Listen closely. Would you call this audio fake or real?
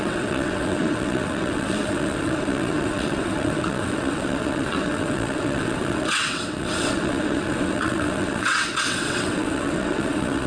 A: fake